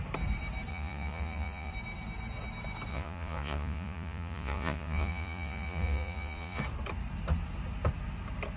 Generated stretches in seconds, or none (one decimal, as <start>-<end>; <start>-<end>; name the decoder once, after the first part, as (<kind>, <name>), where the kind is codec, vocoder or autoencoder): 0.7-1.7 (vocoder, Vocos); 2.9-6.6

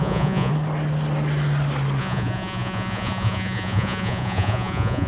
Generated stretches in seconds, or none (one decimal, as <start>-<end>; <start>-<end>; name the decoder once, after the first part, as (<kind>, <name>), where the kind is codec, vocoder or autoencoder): 0.0-0.5 (vocoder, Vocos); 2.0-5.1